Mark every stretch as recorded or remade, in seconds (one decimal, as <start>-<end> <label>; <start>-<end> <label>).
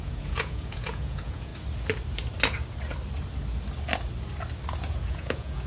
0.0-1.5 remade; 1.5-4.9 recorded; 4.9-5.7 remade